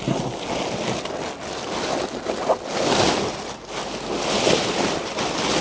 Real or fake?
real